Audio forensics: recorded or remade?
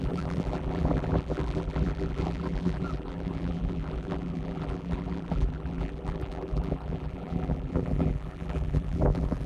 remade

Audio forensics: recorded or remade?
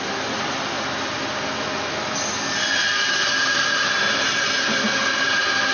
recorded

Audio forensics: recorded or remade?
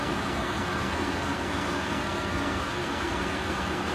remade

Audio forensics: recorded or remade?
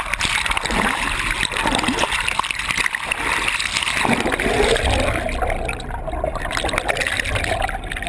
recorded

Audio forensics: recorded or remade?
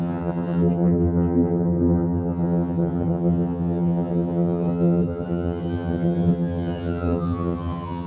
remade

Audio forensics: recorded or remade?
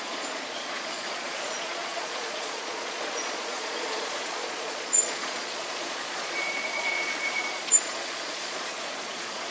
remade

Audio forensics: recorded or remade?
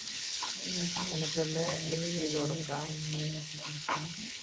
remade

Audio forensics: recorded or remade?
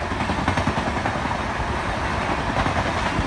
recorded